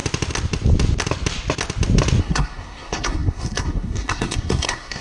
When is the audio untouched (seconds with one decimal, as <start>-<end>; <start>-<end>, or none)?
0.0-2.2